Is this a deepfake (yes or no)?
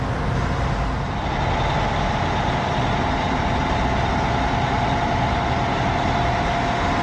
no